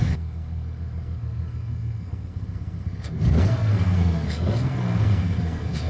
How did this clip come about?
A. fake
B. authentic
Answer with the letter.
A